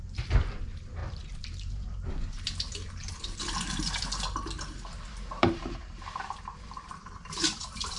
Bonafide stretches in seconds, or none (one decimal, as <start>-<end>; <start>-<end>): none